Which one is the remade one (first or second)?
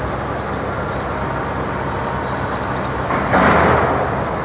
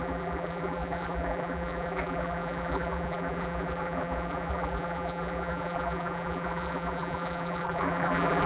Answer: second